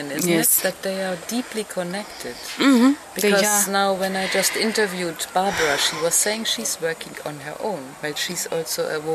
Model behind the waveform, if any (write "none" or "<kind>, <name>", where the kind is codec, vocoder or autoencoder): none